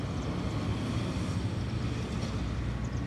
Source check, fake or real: real